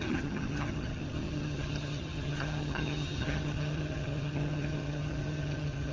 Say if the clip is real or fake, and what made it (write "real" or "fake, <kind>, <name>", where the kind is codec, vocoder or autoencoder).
fake, vocoder, HiFi-GAN